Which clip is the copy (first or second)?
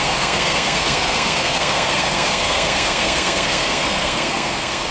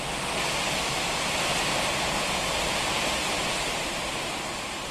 first